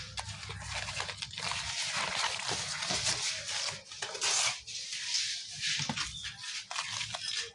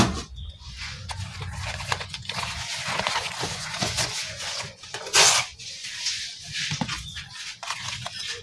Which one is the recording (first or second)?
first